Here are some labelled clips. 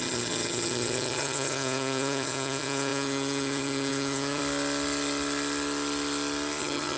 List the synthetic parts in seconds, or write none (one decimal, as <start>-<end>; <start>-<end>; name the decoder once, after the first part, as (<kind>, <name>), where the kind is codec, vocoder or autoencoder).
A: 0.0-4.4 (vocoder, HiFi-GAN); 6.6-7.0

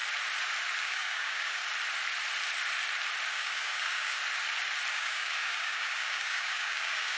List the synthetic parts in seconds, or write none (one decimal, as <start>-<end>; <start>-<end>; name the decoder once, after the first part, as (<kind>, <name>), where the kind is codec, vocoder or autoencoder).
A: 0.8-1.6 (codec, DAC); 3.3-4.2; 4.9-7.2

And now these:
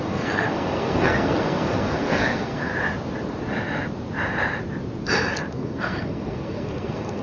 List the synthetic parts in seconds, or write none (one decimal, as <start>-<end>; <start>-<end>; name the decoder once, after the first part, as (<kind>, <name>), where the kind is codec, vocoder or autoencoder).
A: 0.0-2.7 (codec, SNAC); 5.5-7.2

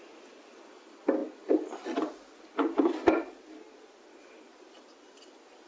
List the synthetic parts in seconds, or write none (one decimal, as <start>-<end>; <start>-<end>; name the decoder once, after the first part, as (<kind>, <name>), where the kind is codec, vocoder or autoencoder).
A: none

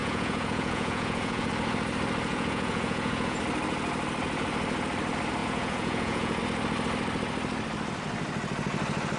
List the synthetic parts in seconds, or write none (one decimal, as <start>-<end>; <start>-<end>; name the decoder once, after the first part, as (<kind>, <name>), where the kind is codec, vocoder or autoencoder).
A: 0.0-1.5 (vocoder, Vocos); 2.3-3.4; 5.4-6.4

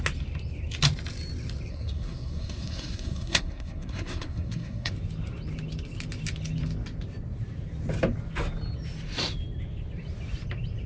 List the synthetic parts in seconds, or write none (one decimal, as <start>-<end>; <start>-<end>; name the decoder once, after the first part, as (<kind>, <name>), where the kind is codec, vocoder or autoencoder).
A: 1.7-4.9 (codec, SNAC)

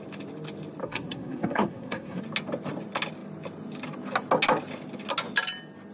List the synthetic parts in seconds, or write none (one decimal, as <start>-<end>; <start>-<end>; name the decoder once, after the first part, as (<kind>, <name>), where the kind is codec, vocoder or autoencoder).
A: 0.8-2.2 (codec, SNAC)

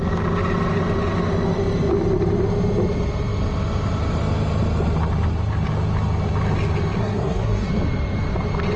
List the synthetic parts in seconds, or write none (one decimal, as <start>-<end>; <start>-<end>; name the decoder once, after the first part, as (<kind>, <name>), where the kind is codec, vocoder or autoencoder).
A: 7.0-7.7 (codec, SNAC)